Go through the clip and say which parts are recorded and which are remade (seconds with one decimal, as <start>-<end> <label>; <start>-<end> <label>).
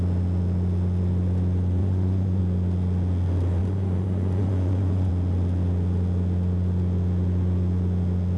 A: 0.0-1.8 recorded; 1.8-2.4 remade; 2.4-3.6 recorded; 3.6-5.1 remade; 5.1-8.4 recorded